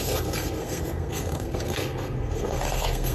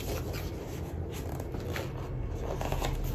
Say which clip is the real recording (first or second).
second